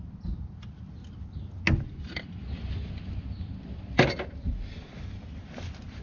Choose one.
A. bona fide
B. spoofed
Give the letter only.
A